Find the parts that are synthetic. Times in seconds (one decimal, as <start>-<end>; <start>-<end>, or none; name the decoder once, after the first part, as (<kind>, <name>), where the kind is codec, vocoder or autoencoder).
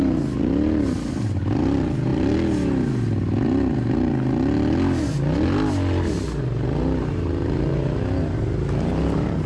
none